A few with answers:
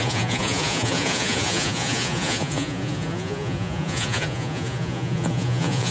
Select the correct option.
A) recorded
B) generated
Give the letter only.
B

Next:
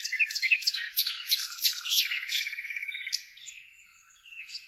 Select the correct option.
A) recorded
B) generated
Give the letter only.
B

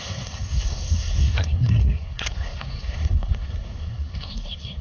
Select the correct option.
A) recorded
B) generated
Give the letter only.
B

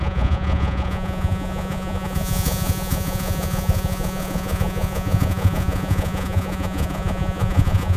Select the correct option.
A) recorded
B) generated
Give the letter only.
B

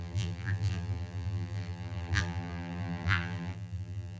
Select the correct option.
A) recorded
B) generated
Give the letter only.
B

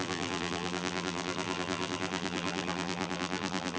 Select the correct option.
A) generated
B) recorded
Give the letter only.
A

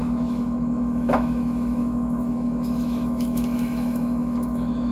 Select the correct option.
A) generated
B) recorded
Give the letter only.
A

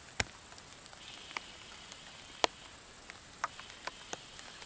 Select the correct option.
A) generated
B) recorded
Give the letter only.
B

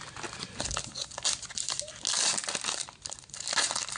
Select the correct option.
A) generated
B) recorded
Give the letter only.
B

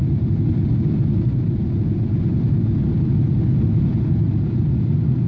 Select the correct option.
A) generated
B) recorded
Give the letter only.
B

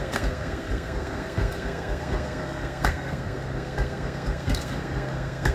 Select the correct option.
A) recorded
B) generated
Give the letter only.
B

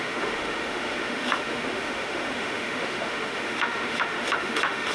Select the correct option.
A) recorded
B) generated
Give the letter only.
B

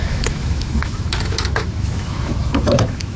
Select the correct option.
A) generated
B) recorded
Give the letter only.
A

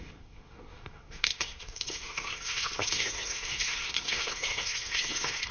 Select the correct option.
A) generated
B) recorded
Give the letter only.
A